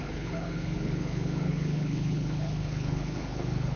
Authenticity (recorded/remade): remade